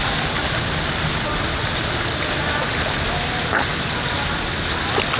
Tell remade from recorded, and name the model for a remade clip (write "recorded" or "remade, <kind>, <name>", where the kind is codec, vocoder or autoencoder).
recorded